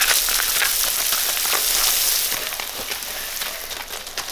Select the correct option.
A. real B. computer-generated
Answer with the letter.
A